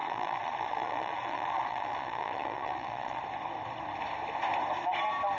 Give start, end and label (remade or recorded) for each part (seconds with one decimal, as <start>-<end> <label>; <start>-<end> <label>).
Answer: 0.0-3.2 remade; 3.2-5.4 recorded